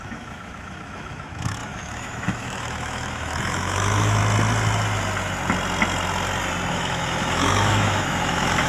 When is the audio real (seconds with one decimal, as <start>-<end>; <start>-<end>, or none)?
4.2-6.7